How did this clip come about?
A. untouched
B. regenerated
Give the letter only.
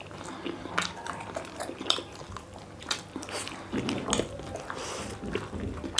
A